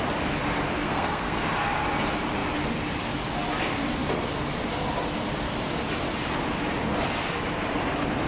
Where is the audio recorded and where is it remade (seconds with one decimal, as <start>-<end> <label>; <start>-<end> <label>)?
0.0-0.8 recorded; 0.8-1.4 remade; 1.4-8.3 recorded